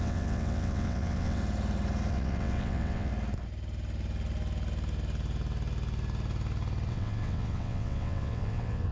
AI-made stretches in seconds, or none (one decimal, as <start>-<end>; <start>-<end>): 0.0-1.4; 2.1-3.1; 6.9-8.9